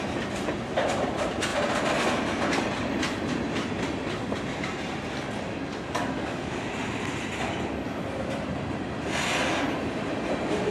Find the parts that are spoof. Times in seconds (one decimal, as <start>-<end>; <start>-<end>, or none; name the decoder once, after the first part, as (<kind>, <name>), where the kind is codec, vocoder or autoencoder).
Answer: 5.7-6.7 (codec, DAC)